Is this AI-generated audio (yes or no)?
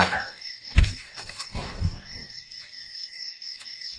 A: yes